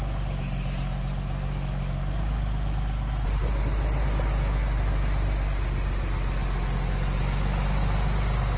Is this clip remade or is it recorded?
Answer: recorded